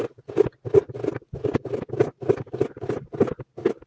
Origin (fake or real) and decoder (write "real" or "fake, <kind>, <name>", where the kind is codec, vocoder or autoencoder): real